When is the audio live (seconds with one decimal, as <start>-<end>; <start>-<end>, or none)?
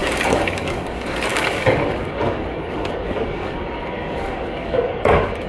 none